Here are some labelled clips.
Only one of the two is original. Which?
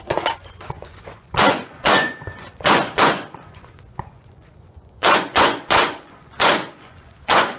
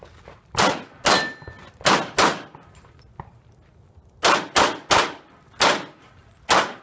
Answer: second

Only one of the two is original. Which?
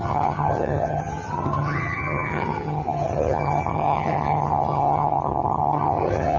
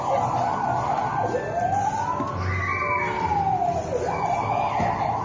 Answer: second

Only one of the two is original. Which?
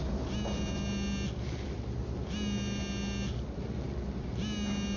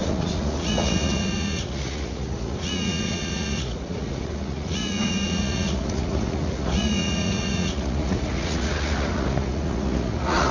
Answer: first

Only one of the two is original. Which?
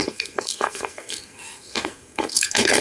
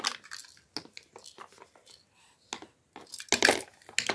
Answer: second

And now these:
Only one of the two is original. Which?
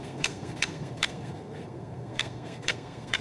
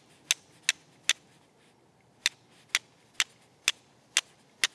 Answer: second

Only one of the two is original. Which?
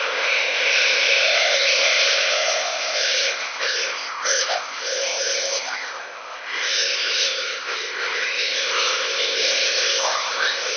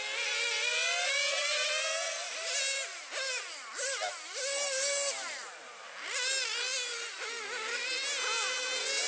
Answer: second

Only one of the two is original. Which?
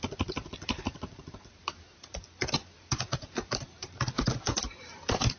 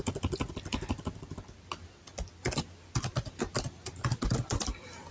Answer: second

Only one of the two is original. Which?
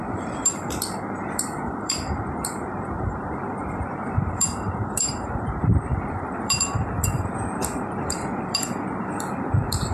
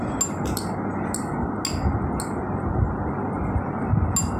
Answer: second